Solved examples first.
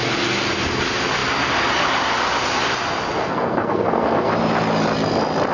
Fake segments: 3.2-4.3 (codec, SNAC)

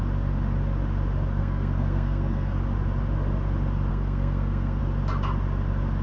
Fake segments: 1.4-2.6 (codec, SNAC); 3.9-4.8

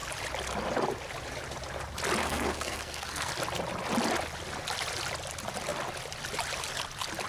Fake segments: 2.2-3.3 (codec, SNAC)

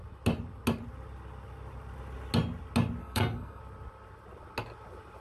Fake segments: 3.0-3.6 (codec, SNAC)

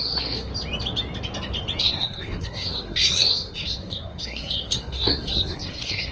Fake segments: 0.0-0.5 (codec, SNAC); 1.8-6.1

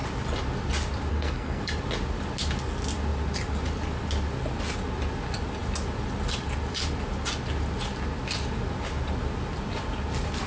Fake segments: 1.1-1.6 (codec, SNAC)

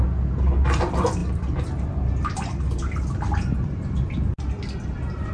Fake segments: none

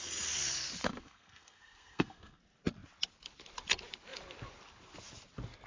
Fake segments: 0.8-2.4 (codec, SNAC)